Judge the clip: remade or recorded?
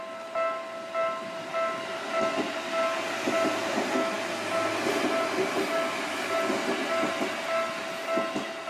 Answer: recorded